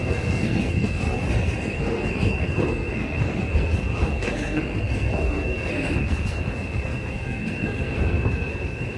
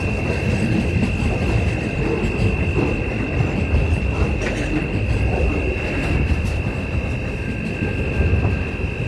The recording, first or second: second